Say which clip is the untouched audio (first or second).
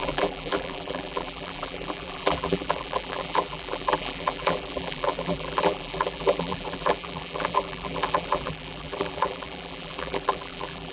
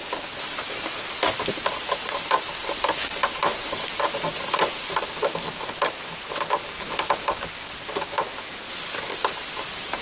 second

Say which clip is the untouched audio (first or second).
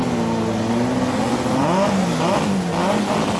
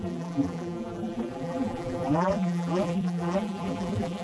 first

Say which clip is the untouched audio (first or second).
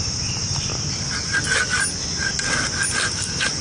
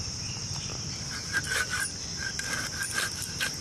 first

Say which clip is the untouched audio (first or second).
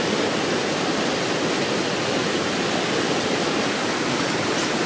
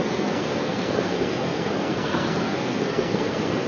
first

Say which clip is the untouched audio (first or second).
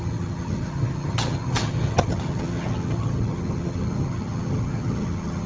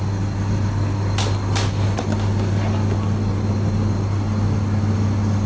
second